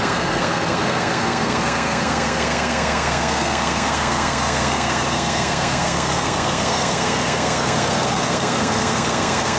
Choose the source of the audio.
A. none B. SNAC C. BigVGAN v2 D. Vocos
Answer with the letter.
B